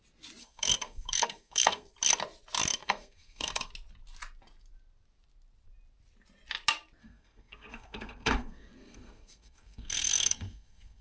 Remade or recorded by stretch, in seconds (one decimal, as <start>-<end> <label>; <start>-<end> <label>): 0.0-0.4 recorded; 0.4-1.9 remade; 1.9-2.8 recorded; 2.8-3.7 remade; 3.7-7.0 recorded; 7.0-11.0 remade

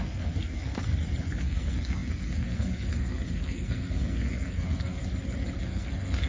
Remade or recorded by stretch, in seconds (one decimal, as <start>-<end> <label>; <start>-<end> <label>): 0.0-0.9 remade; 0.9-1.4 recorded; 1.4-5.0 remade; 5.0-5.6 recorded; 5.6-6.3 remade